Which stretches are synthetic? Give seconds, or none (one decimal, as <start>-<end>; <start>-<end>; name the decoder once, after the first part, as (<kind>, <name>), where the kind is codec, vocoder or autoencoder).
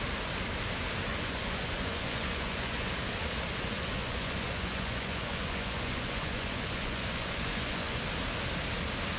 1.1-2.9 (vocoder, Vocos); 3.5-8.0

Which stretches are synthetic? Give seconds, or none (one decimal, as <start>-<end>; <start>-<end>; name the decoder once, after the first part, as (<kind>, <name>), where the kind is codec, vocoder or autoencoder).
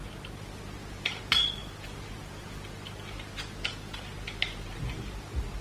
none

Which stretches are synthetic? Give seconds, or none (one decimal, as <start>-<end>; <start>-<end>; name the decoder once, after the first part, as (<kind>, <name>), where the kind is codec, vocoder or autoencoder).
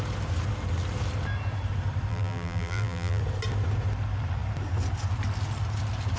2.1-3.2 (vocoder, BigVGAN v2)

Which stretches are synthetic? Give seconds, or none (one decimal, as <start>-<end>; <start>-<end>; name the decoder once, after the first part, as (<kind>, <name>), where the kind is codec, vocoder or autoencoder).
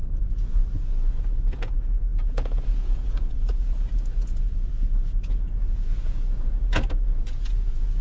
0.0-0.6 (vocoder, Vocos); 1.1-8.0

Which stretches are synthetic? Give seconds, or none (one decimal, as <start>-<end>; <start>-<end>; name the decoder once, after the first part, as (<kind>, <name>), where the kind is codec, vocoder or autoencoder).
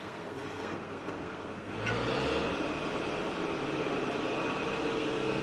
0.0-1.7 (codec, SNAC); 4.9-5.4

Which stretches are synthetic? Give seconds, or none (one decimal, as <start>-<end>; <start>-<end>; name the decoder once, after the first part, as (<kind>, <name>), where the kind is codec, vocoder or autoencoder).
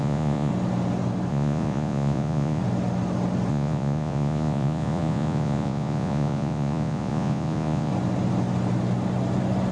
0.0-0.5 (vocoder, Vocos); 1.3-2.6; 3.5-7.9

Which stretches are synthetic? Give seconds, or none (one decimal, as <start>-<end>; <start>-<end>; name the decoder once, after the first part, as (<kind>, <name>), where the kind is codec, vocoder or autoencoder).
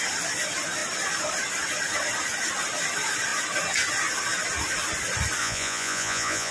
5.4-6.5 (vocoder, Vocos)